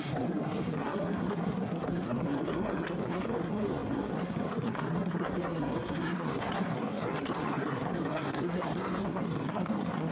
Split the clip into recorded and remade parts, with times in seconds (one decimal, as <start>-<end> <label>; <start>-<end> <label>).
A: 0.0-10.1 remade